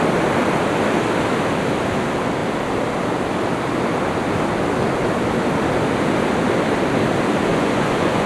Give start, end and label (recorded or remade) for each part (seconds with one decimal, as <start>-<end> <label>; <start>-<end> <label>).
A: 0.0-7.5 recorded; 7.5-8.3 remade